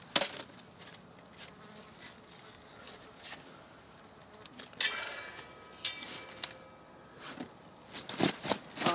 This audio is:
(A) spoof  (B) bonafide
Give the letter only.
B